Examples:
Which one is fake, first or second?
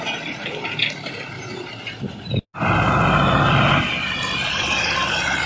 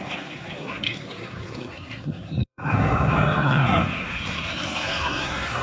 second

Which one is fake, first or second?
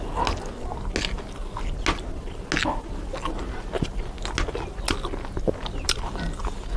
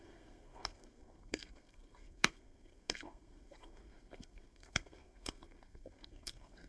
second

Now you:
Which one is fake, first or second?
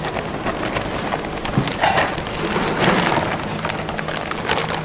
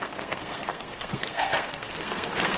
second